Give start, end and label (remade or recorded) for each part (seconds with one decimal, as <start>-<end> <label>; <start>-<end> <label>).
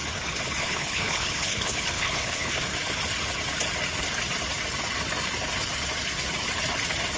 0.0-0.6 recorded; 0.6-2.7 remade; 2.7-7.2 recorded